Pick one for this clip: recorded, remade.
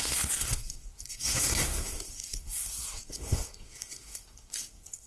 remade